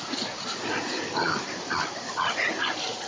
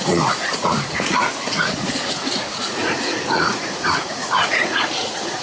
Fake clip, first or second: second